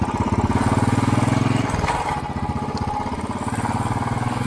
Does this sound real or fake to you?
real